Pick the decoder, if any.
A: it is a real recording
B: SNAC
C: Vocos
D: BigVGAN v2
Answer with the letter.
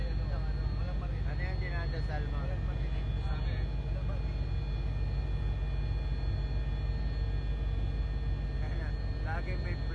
A